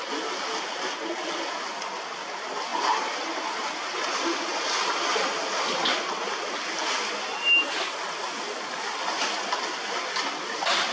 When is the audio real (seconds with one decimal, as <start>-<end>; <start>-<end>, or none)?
0.0-10.9